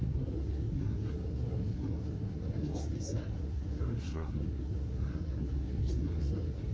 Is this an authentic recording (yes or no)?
no